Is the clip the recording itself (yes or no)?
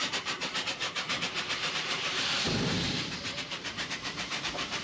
no